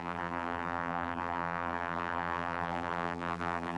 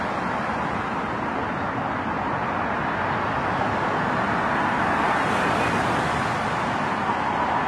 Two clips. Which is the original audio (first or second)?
second